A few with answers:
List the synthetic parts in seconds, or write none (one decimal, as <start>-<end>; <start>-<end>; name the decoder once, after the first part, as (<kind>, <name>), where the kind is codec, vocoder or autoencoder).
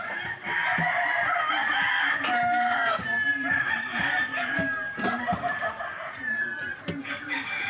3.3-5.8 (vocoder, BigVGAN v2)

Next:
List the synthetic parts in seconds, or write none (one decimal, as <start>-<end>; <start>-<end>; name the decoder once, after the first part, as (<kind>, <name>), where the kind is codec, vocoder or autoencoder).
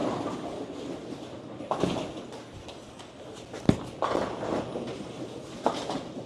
none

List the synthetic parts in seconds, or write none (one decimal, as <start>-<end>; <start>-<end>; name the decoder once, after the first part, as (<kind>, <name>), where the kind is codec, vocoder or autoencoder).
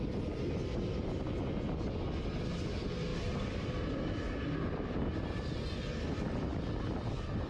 3.1-5.2 (vocoder, BigVGAN v2); 6.5-7.1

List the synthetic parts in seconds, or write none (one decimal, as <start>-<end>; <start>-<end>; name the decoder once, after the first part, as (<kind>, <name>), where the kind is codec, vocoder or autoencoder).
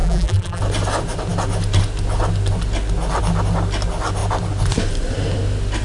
0.0-0.6 (vocoder, BigVGAN v2)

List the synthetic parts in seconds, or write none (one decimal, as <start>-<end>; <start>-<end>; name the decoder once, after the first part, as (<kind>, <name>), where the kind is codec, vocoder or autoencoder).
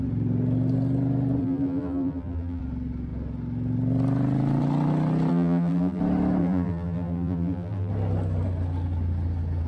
1.4-2.6 (vocoder, BigVGAN v2); 5.3-6.0; 6.4-7.9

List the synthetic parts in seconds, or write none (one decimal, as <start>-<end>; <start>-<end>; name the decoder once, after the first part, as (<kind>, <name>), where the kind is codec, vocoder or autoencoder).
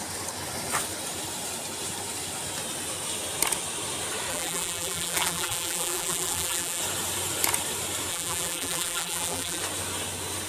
4.3-6.8 (vocoder, BigVGAN v2); 8.1-9.6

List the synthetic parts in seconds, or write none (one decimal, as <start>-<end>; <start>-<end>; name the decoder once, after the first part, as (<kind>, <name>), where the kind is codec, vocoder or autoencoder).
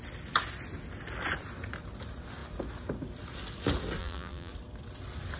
4.0-4.5 (vocoder, BigVGAN v2)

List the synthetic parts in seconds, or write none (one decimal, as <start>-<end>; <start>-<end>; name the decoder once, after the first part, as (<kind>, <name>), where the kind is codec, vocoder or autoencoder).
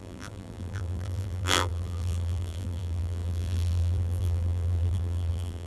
0.0-5.7 (vocoder, BigVGAN v2)